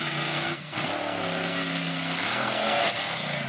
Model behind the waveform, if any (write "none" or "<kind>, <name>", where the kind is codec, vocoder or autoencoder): codec, SNAC